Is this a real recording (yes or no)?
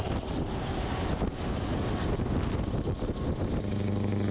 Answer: yes